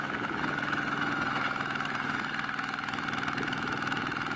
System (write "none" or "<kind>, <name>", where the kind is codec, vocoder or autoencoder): autoencoder, DAC-VAE